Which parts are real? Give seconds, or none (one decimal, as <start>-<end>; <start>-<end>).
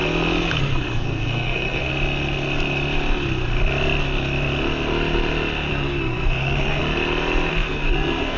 0.0-0.6; 1.9-5.7; 6.8-7.5